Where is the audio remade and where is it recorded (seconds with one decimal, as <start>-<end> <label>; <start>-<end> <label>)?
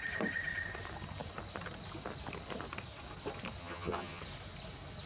0.0-3.6 recorded; 3.6-4.2 remade; 4.2-5.1 recorded